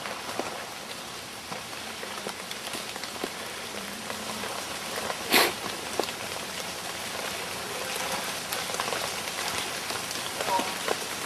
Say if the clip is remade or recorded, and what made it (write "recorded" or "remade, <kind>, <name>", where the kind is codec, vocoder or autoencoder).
remade, vocoder, BigVGAN v2